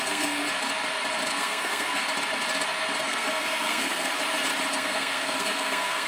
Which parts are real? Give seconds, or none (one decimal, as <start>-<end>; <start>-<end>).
0.4-1.3; 2.0-3.0; 4.1-4.7